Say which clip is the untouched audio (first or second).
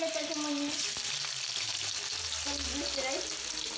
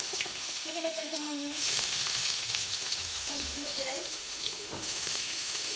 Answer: first